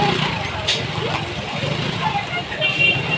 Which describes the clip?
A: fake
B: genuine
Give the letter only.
B